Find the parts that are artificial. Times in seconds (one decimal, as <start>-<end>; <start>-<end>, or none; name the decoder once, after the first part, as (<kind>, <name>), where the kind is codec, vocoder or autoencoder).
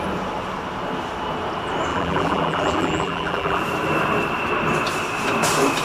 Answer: 1.9-3.6 (vocoder, BigVGAN v2)